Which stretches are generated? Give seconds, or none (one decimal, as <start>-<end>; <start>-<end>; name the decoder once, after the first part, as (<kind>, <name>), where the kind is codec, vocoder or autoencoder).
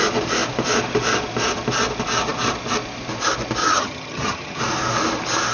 3.6-4.6 (vocoder, HiFi-GAN)